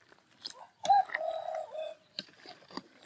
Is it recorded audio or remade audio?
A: recorded